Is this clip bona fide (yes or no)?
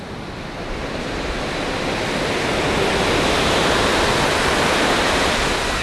yes